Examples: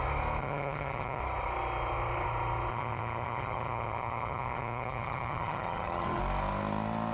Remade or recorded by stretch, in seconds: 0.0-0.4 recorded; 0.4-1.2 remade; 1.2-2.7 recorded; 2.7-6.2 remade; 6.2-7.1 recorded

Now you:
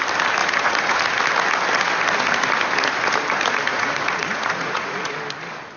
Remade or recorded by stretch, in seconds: 0.0-0.4 recorded; 0.4-1.0 remade; 1.0-3.7 recorded; 3.7-5.1 remade; 5.1-5.8 recorded

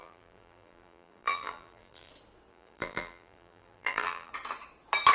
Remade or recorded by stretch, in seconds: 0.0-2.1 remade; 2.1-2.5 recorded; 2.5-4.3 remade; 4.3-5.1 recorded

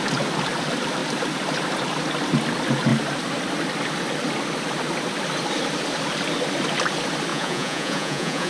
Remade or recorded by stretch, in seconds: 0.0-7.3 recorded; 7.3-8.5 remade